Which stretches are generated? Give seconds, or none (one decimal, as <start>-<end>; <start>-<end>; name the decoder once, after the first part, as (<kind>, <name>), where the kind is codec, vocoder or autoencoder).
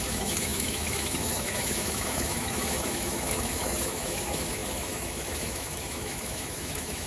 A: 0.0-7.1 (autoencoder, DAC-VAE)